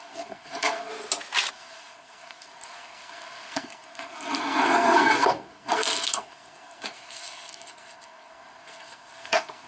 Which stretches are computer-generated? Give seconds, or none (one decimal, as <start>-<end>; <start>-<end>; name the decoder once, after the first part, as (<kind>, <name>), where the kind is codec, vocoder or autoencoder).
0.0-0.9 (codec, SNAC); 1.5-9.7